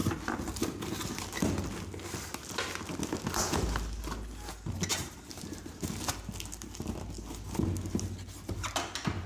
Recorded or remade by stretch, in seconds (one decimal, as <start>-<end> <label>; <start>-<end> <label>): 0.0-4.9 recorded; 4.9-6.1 remade; 6.1-9.3 recorded

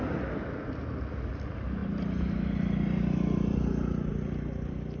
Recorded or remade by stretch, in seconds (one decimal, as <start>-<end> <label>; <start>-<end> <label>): 0.0-5.0 recorded